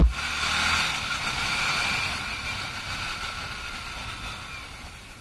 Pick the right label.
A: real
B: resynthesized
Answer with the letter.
A